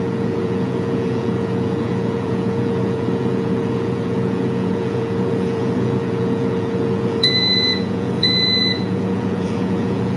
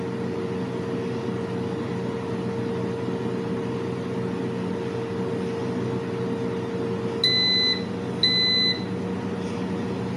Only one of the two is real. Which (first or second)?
second